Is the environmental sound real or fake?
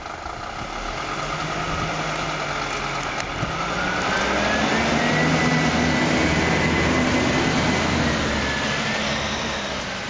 real